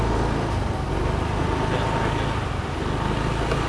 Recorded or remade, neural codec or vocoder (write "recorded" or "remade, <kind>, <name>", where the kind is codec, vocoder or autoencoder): recorded